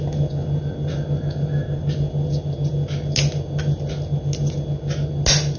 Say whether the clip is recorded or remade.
recorded